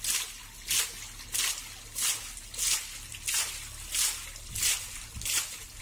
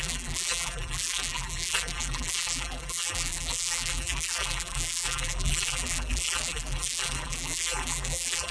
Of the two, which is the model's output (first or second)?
second